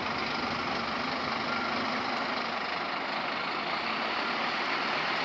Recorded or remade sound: recorded